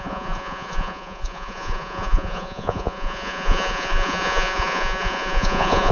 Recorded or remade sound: remade